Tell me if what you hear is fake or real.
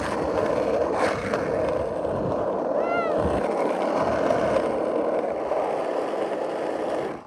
real